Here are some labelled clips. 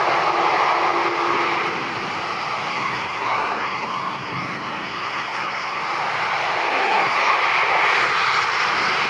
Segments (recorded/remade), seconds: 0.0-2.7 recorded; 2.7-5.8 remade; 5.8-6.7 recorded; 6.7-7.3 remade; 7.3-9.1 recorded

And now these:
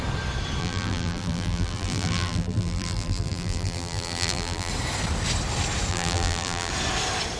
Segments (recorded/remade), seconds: 0.0-0.6 recorded; 0.6-4.7 remade; 4.7-5.9 recorded; 5.9-6.7 remade; 6.7-7.4 recorded